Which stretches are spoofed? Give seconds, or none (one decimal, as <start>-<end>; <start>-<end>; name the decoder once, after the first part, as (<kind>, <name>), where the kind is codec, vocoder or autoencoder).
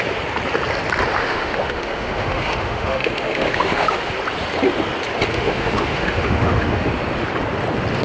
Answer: 1.2-4.1 (autoencoder, DAC-VAE); 5.3-6.9